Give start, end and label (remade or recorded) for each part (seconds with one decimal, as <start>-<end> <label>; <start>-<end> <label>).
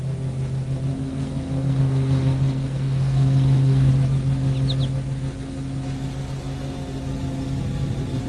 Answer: 0.0-0.9 recorded; 0.9-3.9 remade; 3.9-8.3 recorded